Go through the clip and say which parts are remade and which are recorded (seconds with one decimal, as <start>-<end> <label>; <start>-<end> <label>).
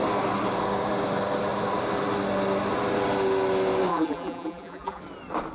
0.0-3.9 recorded; 3.9-5.0 remade; 5.0-5.5 recorded